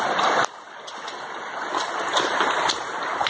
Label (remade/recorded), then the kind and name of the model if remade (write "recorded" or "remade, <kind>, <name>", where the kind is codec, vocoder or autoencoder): recorded